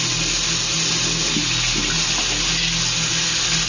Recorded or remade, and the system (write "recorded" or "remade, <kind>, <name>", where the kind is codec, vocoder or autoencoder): recorded